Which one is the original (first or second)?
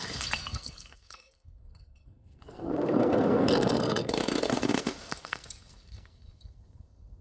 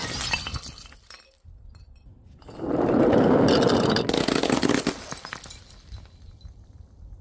second